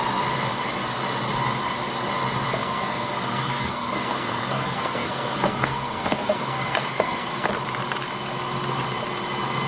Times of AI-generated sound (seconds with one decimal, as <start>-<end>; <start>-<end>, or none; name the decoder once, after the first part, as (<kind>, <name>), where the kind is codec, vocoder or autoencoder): 2.6-7.5 (codec, SNAC)